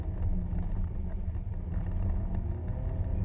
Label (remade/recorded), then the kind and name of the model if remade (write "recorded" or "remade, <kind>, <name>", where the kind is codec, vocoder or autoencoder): recorded